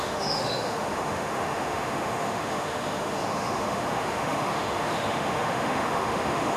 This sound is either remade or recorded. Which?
remade